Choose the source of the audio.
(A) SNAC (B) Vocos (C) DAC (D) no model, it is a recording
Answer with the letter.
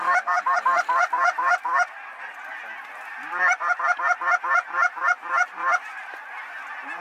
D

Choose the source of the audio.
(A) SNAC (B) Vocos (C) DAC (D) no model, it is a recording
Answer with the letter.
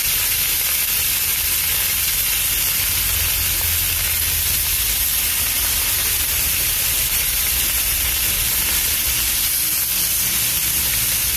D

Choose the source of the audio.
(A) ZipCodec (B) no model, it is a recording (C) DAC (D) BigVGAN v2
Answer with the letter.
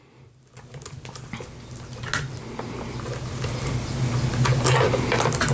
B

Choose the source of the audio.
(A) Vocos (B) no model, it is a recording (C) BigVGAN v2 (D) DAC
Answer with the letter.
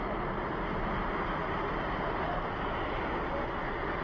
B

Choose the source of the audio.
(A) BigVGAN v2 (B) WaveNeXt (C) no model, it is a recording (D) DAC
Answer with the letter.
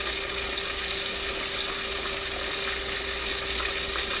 C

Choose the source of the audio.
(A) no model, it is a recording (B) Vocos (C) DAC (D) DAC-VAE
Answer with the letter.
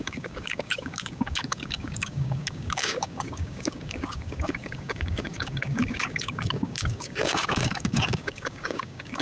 C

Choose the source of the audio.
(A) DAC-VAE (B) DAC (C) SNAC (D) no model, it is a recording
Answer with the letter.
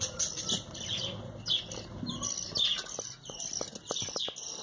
D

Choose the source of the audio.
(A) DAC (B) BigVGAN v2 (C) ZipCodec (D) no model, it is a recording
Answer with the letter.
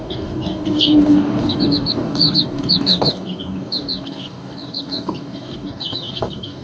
A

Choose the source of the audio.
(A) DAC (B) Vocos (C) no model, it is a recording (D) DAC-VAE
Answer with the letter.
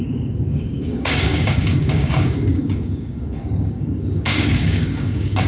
A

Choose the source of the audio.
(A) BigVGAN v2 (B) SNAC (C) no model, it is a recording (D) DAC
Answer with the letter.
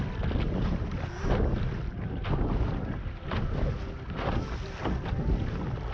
C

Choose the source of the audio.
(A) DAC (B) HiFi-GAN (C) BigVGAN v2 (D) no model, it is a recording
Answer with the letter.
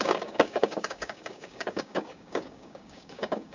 A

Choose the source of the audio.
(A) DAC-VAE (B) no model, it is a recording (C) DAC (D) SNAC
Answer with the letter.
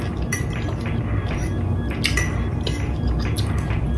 B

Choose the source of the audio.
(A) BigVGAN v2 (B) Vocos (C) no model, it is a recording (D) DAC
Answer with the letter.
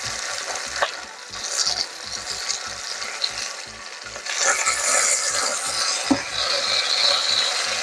C